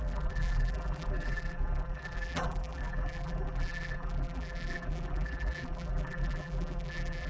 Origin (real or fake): fake